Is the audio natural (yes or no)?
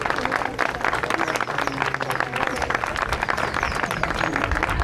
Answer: yes